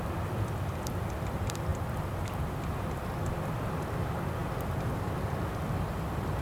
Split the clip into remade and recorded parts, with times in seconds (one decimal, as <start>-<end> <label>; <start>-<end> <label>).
0.0-6.4 recorded